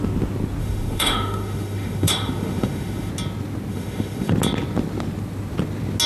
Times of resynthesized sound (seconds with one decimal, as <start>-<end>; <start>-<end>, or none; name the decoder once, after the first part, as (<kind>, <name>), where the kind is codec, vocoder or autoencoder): 0.6-3.1 (autoencoder, DAC-VAE); 3.7-4.3